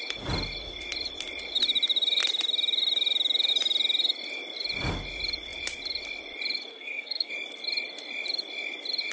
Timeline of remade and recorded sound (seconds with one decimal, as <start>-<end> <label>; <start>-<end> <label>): 0.0-6.7 recorded; 6.7-7.3 remade; 7.3-9.1 recorded